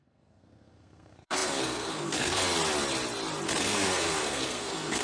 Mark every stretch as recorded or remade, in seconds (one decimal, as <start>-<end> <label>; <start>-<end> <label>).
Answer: 0.0-2.4 remade; 2.4-3.6 recorded; 3.6-5.0 remade